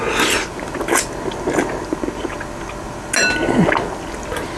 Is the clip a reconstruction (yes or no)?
no